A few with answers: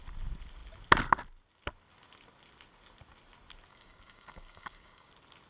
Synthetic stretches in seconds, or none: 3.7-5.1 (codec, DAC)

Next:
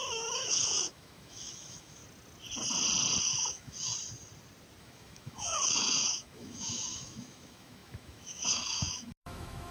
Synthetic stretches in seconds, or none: 0.0-2.0 (autoencoder, DAC-VAE); 3.2-3.9; 4.8-9.7

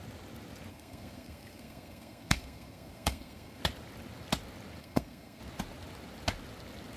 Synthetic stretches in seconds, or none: 0.7-3.6 (codec, SNAC); 4.8-5.4

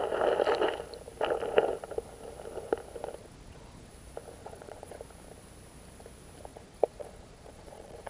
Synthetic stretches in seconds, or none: 3.2-3.9 (vocoder, Vocos); 4.4-5.0; 6.5-8.1

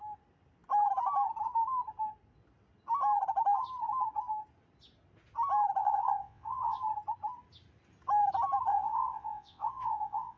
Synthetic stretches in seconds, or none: 5.8-6.8 (vocoder, WaveNeXt); 8.7-10.4

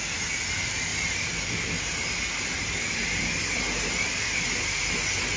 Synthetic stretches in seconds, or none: none

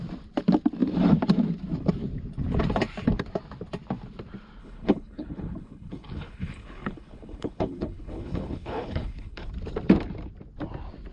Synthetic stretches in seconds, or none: 4.6-9.5 (codec, HILCodec)